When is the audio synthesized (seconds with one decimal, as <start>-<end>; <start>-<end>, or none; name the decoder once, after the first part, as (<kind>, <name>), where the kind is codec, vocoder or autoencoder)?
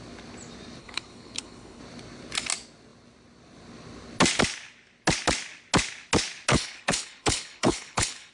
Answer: 0.8-1.8 (codec, HILCodec); 6.5-8.3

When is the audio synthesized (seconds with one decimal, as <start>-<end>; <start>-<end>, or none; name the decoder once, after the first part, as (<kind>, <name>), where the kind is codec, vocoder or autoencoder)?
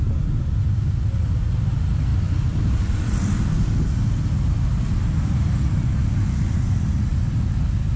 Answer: 2.1-5.8 (vocoder, BigVGAN v2)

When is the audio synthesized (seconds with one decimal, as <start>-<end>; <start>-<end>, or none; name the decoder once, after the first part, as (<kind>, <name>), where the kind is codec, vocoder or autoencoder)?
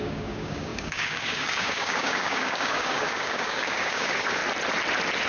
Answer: 0.0-4.4 (codec, DAC)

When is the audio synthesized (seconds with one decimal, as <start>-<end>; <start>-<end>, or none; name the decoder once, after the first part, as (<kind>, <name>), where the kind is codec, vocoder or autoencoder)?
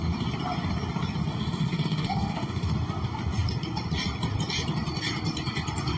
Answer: 1.3-2.7 (autoencoder, DAC-VAE)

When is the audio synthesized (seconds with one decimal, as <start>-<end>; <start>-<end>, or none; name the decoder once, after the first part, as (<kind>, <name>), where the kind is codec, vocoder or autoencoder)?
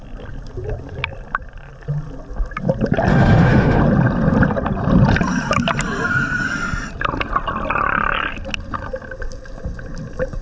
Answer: 3.1-3.8 (autoencoder, DAC-VAE)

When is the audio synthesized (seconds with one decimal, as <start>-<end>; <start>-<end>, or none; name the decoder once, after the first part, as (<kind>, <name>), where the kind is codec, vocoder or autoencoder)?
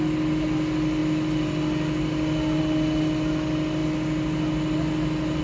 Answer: none